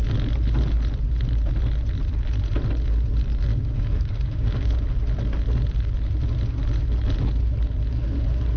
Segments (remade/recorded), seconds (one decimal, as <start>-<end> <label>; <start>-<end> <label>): 0.0-3.5 recorded; 3.5-4.7 remade; 4.7-8.6 recorded